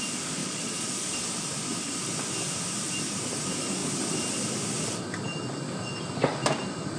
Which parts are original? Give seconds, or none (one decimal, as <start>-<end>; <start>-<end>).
0.0-0.4; 1.1-7.0